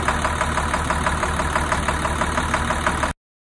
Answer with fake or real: real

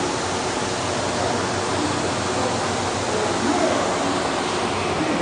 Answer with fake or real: real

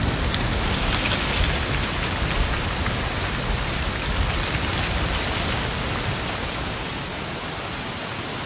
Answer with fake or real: real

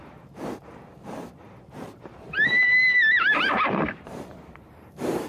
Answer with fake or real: fake